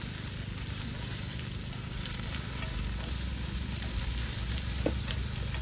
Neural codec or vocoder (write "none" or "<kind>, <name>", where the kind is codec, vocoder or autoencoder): none